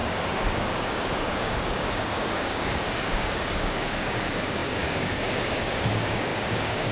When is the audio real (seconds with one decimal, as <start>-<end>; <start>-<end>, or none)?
none

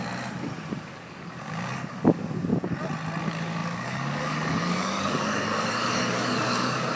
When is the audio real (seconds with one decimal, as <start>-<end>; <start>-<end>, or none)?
0.0-0.7; 2.5-3.2

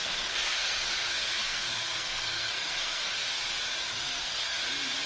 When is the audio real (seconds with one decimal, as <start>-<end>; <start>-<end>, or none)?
3.1-4.0; 4.6-5.1

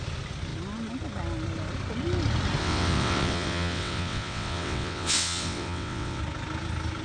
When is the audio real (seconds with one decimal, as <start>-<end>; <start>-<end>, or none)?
0.0-2.6; 6.2-7.0